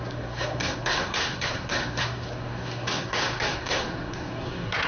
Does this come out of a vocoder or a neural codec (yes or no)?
yes